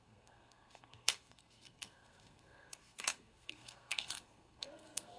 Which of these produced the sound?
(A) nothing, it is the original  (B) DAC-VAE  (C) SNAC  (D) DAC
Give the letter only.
C